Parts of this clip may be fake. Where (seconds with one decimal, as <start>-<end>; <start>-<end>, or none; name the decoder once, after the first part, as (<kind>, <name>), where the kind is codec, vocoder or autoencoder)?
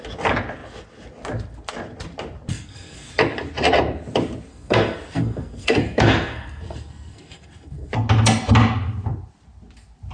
2.5-3.1 (codec, SNAC); 4.5-7.9